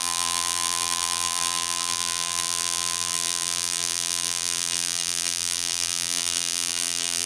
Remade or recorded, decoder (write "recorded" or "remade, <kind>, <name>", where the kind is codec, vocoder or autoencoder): remade, vocoder, BigVGAN v2